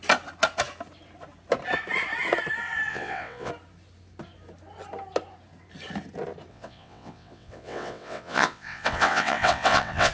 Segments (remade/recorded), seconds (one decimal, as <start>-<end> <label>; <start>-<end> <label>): 0.0-2.9 recorded; 2.9-3.5 remade; 3.5-6.5 recorded; 6.5-10.1 remade